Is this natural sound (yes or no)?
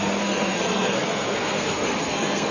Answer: no